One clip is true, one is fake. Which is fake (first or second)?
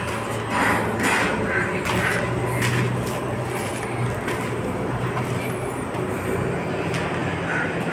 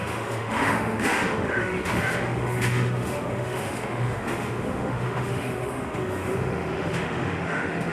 second